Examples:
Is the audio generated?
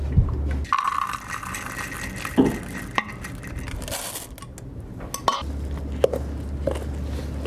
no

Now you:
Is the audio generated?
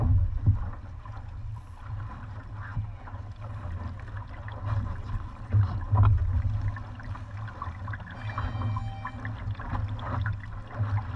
no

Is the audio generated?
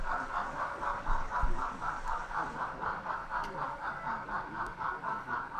yes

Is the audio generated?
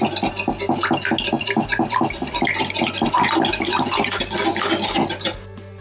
no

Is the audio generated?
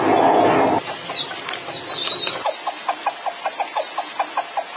no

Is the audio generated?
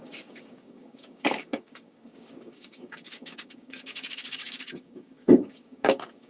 yes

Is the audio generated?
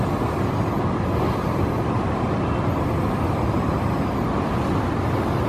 no